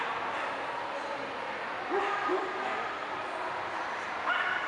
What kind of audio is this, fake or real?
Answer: real